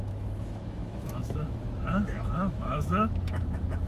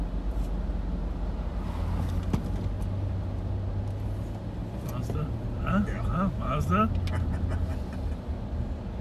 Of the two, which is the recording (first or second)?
second